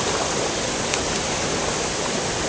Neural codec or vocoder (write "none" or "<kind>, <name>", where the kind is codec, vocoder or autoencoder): vocoder, BigVGAN v2